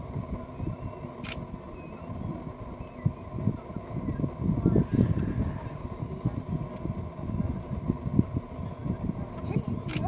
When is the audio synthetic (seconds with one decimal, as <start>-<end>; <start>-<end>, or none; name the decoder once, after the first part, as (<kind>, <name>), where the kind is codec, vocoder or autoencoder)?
none